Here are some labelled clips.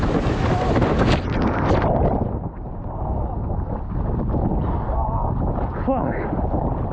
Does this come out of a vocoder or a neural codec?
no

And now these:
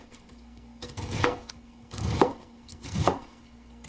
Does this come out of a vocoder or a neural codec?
yes